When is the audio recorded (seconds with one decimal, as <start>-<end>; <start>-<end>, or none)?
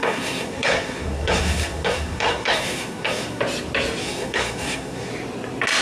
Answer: 3.4-4.0; 5.1-5.8